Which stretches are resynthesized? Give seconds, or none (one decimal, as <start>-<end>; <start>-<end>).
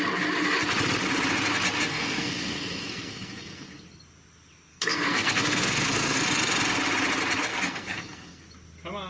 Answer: 1.9-3.7; 4.7-6.2; 7.5-8.4